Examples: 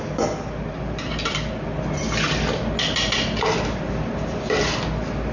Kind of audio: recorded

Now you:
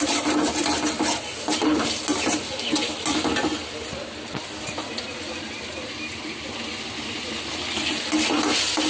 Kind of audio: recorded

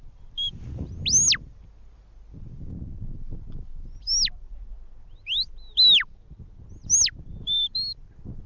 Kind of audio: recorded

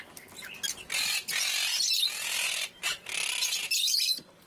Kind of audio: recorded